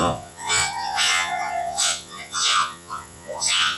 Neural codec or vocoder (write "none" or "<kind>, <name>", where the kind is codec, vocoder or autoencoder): vocoder, Vocos